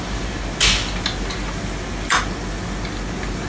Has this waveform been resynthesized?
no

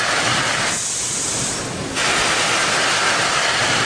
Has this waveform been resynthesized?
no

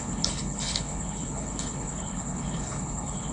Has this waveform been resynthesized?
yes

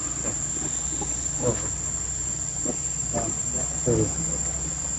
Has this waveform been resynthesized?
no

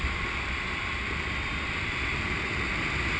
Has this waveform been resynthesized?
no